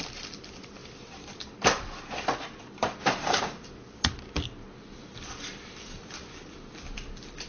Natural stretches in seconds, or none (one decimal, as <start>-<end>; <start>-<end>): none